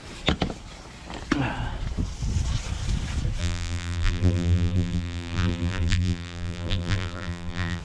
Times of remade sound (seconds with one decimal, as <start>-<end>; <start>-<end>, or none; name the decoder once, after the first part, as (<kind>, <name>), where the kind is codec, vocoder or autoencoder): 3.4-7.8 (vocoder, BigVGAN v2)